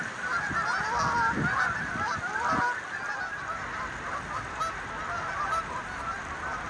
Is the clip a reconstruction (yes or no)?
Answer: no